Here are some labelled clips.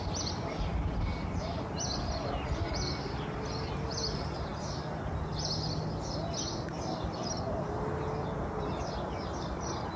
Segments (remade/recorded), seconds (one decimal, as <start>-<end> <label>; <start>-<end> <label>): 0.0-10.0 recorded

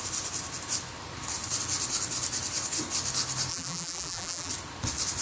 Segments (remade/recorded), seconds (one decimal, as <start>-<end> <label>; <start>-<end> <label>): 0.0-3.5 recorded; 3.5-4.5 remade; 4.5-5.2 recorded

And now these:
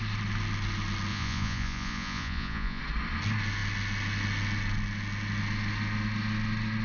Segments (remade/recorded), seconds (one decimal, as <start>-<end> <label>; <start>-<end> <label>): 0.0-1.1 recorded; 1.1-2.8 remade; 2.8-6.8 recorded